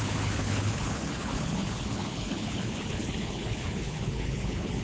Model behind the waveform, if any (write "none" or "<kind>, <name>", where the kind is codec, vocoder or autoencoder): codec, HILCodec